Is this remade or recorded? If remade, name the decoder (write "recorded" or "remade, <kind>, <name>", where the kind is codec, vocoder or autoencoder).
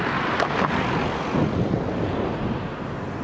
recorded